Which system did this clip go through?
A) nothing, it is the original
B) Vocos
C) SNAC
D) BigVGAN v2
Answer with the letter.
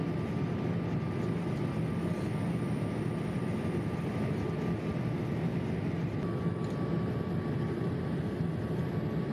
A